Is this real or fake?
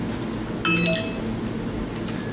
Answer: real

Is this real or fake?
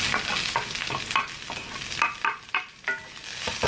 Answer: real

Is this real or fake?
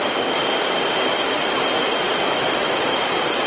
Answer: fake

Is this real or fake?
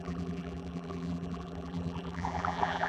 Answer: fake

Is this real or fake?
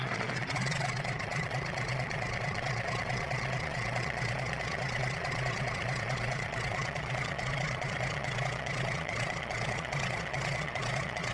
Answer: fake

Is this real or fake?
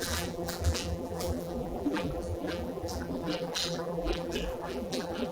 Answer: fake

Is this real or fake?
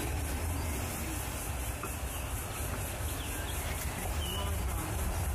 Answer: real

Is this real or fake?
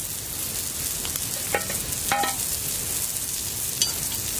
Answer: real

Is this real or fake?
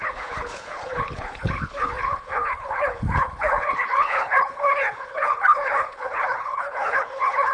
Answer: fake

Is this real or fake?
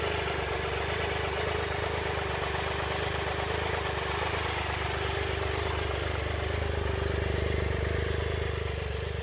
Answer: real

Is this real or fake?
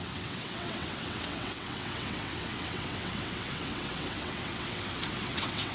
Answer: fake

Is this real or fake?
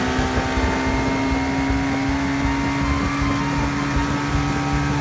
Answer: real